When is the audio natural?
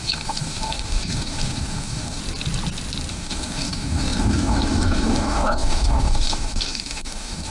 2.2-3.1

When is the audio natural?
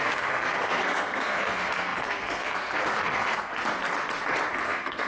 3.5-4.5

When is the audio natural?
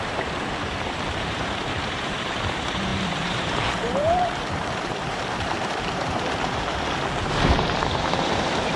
6.7-7.2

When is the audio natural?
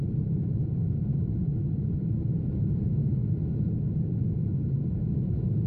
3.2-5.7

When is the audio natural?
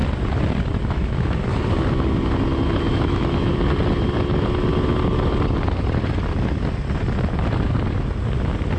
0.0-0.9; 1.5-2.8; 3.5-8.8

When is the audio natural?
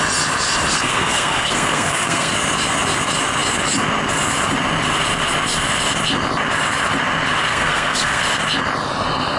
0.0-0.7; 2.3-7.5; 8.2-9.4